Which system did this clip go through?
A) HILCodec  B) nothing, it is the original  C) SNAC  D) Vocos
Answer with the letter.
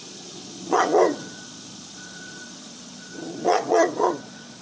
D